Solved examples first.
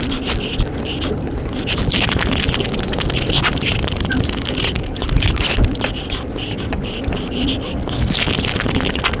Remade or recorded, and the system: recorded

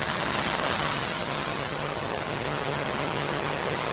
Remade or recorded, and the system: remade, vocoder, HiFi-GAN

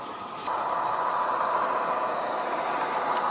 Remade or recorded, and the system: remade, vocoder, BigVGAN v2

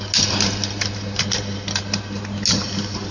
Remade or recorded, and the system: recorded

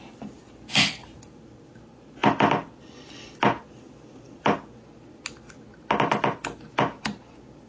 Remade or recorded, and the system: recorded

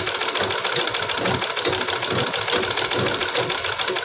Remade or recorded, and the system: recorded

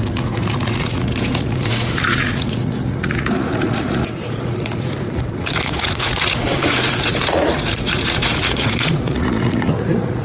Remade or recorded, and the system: remade, vocoder, Vocos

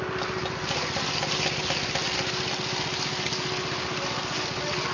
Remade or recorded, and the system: recorded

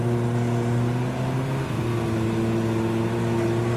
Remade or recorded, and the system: recorded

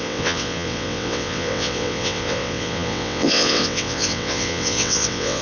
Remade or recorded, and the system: remade, vocoder, WaveNeXt